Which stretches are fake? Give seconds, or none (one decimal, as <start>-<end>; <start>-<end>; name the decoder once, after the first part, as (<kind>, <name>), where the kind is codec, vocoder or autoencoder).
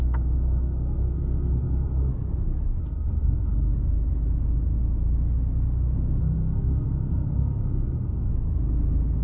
0.0-2.1 (codec, SNAC); 2.8-3.7; 6.2-8.3